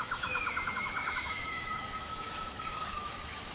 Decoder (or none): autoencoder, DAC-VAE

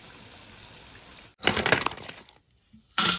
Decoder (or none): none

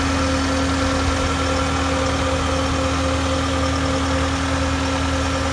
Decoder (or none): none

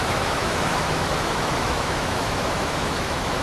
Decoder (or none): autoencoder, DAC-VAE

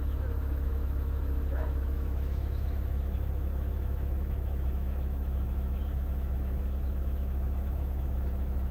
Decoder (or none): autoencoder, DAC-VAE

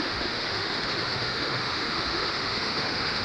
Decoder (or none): autoencoder, DAC-VAE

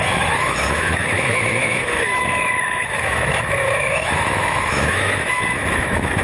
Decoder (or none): autoencoder, DAC-VAE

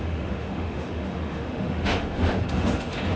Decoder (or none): autoencoder, DAC-VAE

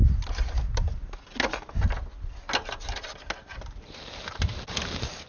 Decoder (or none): none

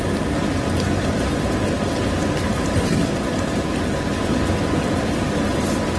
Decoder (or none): none